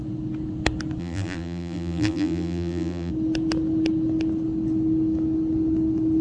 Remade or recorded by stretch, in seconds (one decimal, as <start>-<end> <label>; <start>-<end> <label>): 0.0-1.0 recorded; 1.0-3.1 remade; 3.1-6.2 recorded